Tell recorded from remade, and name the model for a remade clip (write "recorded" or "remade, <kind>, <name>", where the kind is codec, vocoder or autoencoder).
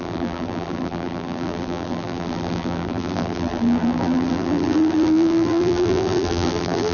remade, vocoder, BigVGAN v2